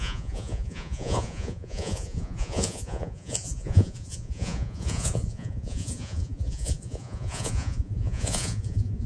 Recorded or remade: remade